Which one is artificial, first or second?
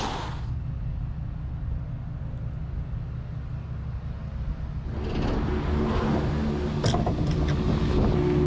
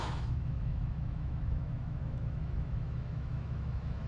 second